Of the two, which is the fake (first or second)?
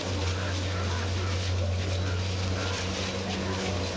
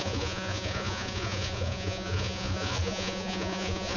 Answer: second